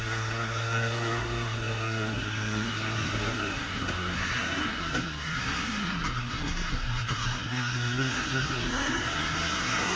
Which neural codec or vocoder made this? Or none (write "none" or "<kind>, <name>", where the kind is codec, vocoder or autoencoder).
codec, SNAC